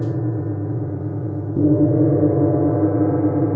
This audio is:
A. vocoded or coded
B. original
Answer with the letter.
A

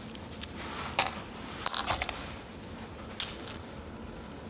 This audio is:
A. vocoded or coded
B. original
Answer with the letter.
B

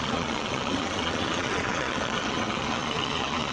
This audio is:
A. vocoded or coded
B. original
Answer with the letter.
A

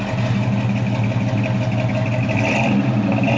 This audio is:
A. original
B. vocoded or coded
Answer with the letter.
A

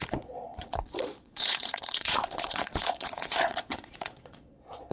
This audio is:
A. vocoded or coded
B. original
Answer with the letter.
A